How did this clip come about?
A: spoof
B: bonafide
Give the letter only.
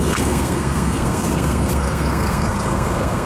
A